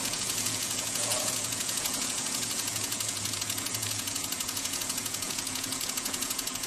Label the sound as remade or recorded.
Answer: remade